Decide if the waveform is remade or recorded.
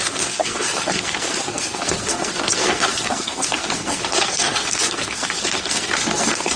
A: remade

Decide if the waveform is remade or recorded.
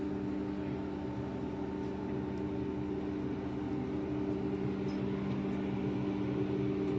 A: recorded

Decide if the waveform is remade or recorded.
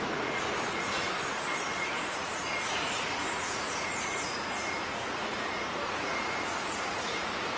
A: remade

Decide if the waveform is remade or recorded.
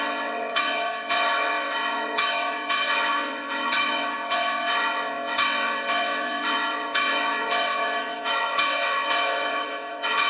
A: remade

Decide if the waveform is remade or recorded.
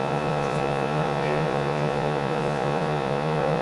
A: remade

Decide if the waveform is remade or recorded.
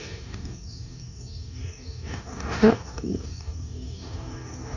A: remade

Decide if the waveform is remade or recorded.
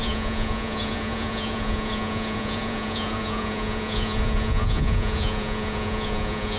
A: remade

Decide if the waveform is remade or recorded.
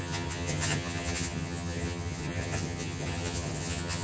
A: remade